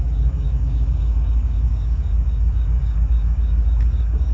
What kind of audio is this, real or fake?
fake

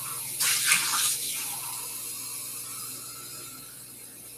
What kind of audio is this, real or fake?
real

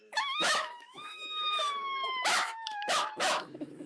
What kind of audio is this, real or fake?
fake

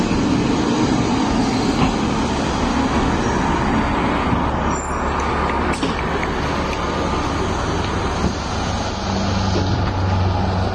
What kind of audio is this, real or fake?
real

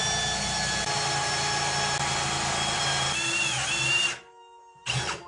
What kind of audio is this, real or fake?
real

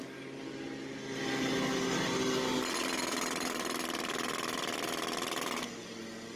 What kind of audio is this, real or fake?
real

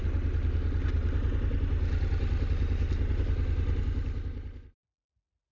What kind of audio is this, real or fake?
real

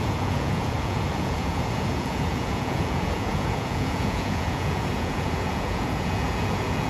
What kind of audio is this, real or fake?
fake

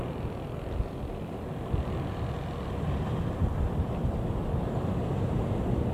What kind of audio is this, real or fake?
real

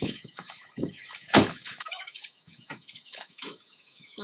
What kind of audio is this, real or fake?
fake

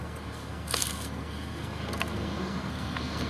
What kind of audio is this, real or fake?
fake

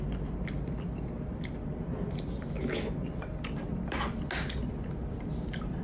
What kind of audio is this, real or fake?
real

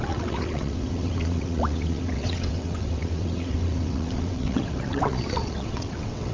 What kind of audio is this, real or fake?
fake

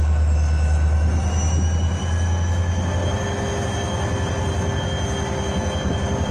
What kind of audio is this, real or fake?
real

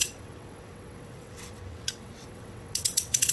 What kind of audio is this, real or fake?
fake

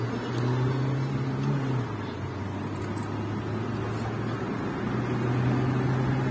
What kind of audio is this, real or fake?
real